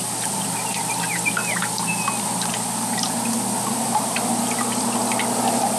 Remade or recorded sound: recorded